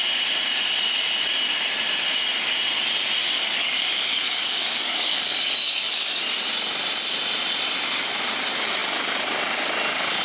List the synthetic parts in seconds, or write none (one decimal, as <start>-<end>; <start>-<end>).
3.2-6.2